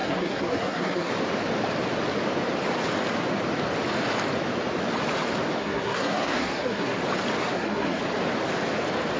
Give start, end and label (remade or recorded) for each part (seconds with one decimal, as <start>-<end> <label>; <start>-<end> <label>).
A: 0.0-1.1 remade; 1.1-5.6 recorded; 5.6-7.0 remade; 7.0-7.4 recorded; 7.4-8.0 remade; 8.0-9.2 recorded